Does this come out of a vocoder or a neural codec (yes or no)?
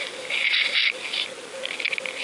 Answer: no